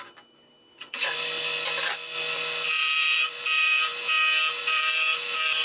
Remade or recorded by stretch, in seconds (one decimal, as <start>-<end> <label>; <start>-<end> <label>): 0.0-3.9 remade; 3.9-4.6 recorded; 4.6-5.6 remade